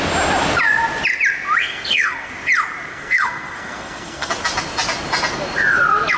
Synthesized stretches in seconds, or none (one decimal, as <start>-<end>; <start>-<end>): 1.6-2.3; 2.9-4.3